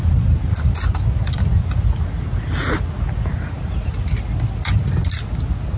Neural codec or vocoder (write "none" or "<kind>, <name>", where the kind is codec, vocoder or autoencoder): none